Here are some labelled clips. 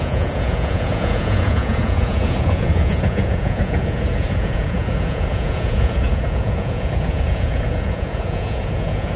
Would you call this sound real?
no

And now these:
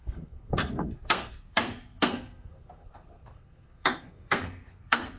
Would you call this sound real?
no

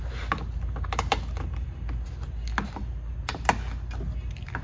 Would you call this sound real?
yes